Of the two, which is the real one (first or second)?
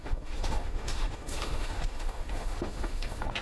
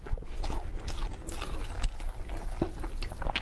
second